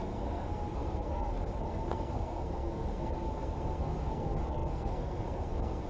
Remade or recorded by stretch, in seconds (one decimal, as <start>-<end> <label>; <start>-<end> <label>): 0.0-5.9 remade